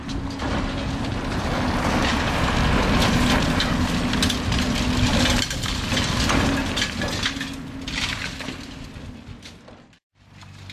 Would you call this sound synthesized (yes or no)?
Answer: no